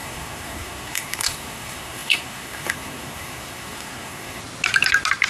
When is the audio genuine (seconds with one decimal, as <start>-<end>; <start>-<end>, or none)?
4.4-5.3

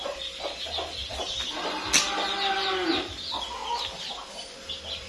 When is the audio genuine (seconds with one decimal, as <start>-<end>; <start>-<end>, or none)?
0.0-5.1

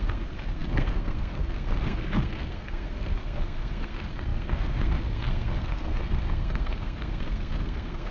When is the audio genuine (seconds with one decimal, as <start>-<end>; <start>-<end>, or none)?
none

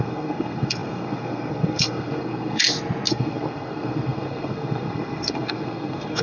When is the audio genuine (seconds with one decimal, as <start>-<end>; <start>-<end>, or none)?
2.6-3.1

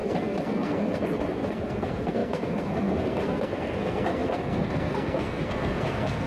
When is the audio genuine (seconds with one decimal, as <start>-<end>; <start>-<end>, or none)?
none

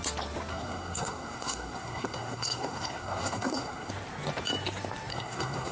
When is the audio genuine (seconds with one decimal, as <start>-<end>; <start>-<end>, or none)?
0.0-0.5; 3.9-5.1

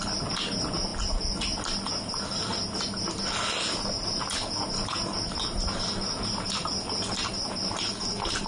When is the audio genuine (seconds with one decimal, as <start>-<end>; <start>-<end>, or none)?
0.0-8.5